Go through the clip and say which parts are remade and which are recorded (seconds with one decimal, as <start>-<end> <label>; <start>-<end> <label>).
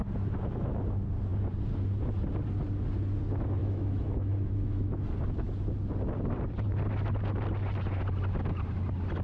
0.0-3.6 recorded; 3.6-4.9 remade; 4.9-9.2 recorded